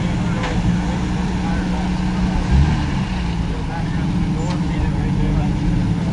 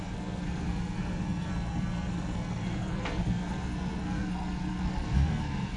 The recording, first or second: first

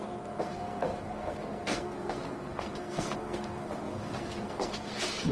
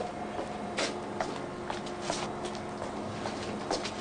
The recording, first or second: second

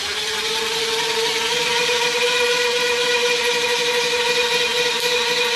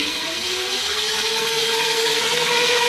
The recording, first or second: first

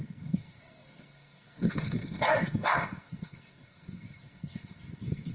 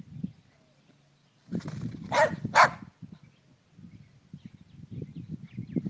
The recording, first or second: second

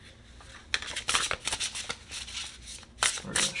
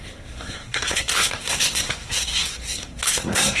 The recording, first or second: first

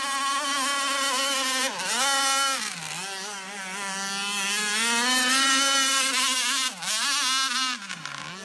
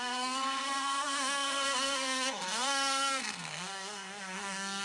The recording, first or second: first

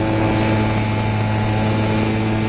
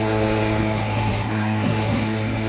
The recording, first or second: first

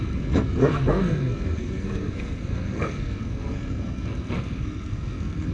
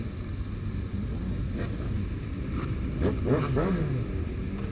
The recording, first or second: second